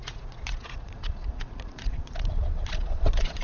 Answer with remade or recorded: remade